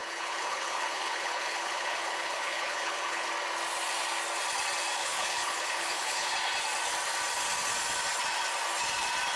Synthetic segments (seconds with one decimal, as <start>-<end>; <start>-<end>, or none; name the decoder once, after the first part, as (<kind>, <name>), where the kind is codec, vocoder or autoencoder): 0.0-3.3 (codec, HILCodec); 5.0-6.3